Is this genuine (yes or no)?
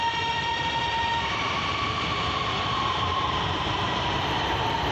no